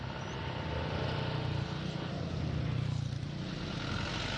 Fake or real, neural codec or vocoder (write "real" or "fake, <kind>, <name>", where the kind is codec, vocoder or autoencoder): real